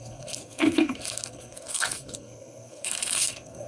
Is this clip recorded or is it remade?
remade